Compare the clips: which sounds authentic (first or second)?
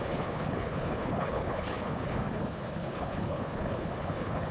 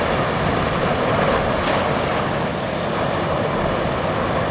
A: second